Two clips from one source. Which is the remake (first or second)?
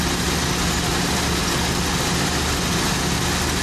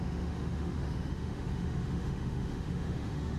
second